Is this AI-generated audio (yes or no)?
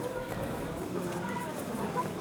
yes